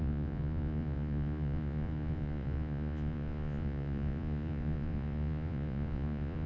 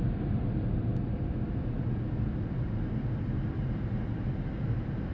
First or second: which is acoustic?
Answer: second